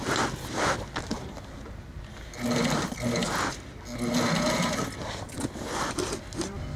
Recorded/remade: recorded